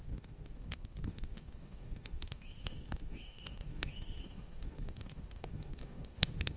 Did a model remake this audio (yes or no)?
yes